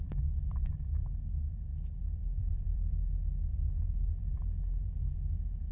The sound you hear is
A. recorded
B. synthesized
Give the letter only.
B